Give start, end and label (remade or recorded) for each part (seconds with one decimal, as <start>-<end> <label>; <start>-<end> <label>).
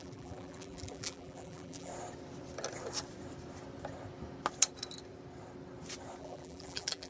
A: 0.0-1.9 remade; 1.9-6.2 recorded; 6.2-7.1 remade